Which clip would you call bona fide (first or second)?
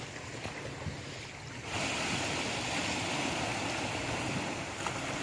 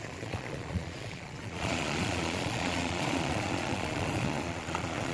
first